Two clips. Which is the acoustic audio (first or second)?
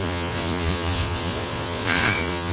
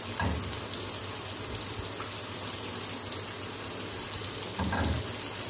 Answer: second